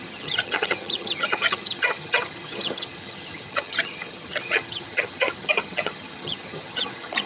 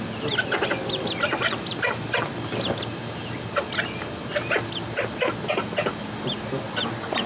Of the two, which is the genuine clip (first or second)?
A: second